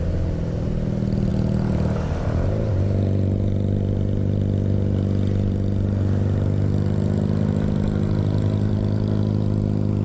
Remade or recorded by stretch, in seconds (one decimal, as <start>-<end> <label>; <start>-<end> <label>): 0.0-10.0 recorded